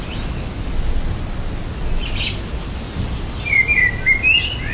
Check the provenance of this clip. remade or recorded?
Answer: recorded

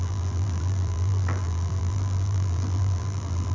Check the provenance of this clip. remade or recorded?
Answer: remade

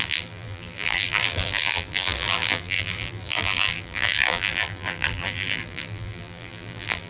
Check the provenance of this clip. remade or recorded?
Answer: remade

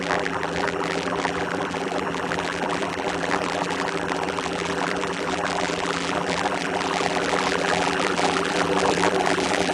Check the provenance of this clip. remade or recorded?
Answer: remade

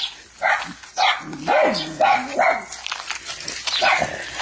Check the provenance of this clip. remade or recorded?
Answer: recorded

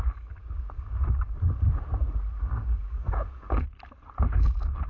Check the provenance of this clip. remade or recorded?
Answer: recorded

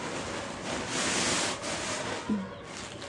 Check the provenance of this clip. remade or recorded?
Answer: recorded